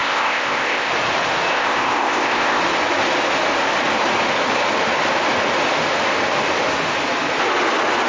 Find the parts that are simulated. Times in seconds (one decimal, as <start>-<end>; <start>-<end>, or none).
0.0-0.9; 1.5-2.6